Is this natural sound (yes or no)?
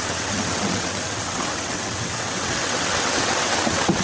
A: no